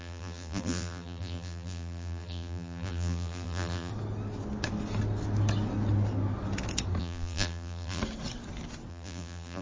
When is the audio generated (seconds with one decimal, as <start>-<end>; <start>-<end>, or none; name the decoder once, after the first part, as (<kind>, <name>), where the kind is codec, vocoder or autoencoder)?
0.0-3.9 (vocoder, BigVGAN v2); 7.0-8.0; 8.9-9.6